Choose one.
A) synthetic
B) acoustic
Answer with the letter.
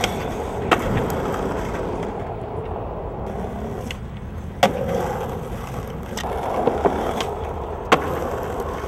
B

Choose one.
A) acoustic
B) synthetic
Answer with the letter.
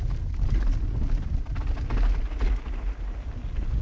A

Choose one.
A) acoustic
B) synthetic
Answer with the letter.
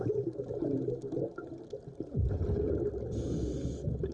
A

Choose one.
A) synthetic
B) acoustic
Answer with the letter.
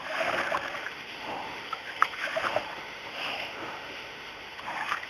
A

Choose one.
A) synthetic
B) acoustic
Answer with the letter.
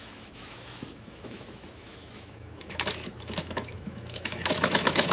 A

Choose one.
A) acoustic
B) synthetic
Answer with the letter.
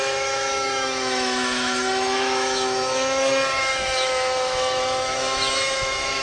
B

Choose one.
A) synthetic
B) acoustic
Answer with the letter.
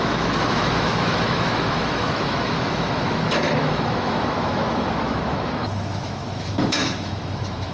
A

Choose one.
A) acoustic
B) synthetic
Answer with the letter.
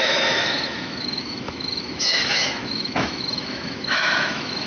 B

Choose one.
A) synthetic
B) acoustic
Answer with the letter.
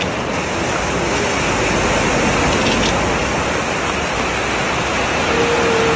B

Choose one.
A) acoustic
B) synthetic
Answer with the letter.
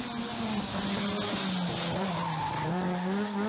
A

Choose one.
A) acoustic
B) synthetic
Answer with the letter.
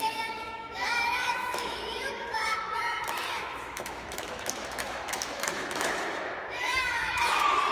B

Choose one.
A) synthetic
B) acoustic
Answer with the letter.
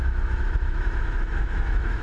A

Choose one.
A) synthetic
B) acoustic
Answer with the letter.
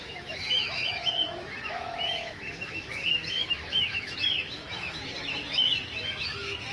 A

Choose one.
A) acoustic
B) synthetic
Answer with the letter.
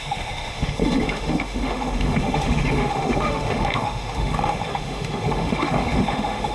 B